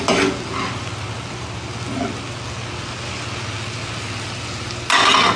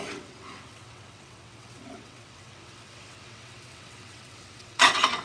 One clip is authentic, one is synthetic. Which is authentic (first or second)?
first